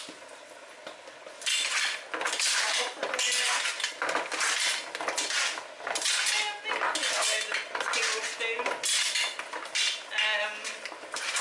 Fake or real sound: real